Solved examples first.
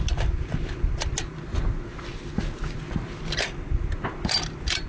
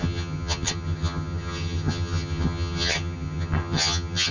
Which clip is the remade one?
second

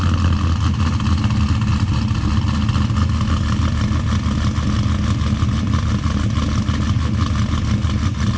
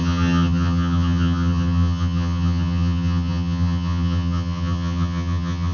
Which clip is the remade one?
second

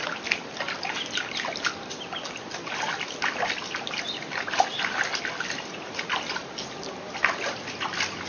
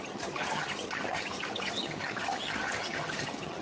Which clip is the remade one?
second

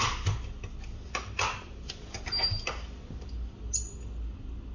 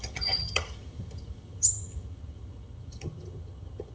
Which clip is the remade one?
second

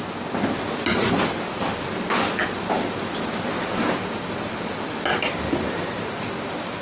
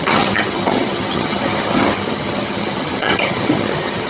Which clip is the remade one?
second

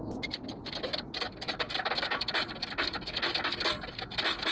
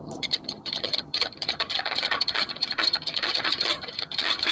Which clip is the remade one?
second